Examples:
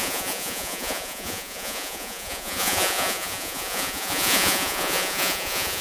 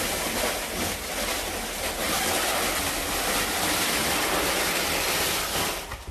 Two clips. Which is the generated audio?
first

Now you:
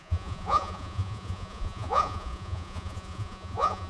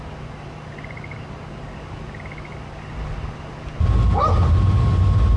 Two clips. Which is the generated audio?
first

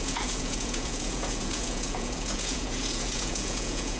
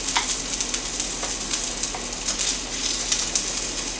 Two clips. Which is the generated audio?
first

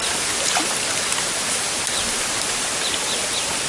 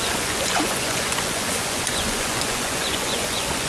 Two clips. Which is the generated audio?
second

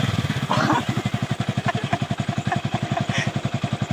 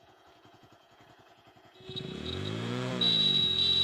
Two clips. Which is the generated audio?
second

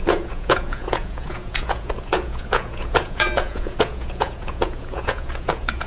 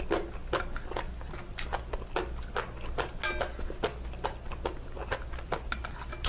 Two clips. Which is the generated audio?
first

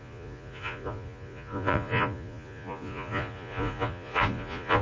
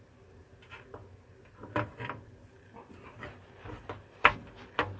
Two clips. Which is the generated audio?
first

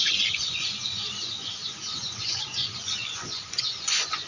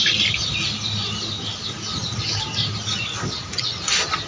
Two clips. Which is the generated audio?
first